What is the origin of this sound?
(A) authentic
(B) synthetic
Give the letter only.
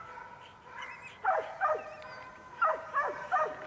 A